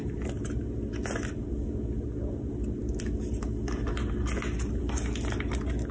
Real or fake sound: real